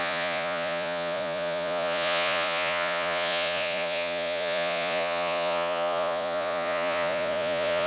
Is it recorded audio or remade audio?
remade